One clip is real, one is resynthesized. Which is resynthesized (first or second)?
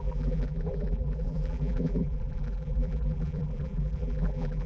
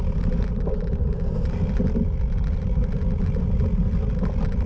first